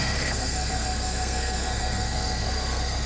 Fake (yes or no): yes